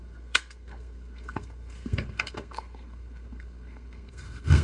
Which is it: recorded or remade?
remade